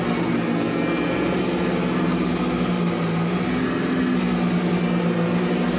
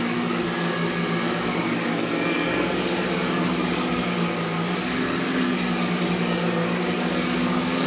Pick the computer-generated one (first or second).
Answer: second